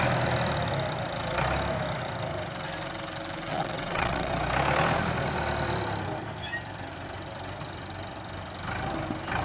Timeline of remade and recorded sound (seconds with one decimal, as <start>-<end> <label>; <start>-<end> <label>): 0.0-3.5 recorded; 3.5-4.3 remade; 4.3-9.4 recorded

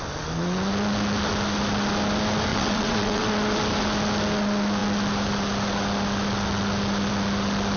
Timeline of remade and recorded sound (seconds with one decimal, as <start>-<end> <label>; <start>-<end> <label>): 0.0-2.5 recorded; 2.5-3.3 remade; 3.3-7.8 recorded